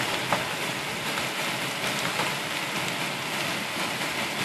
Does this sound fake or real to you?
real